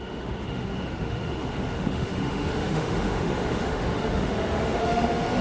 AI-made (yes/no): yes